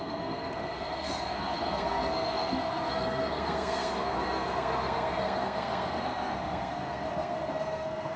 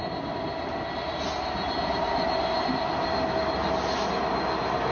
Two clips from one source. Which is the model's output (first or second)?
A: first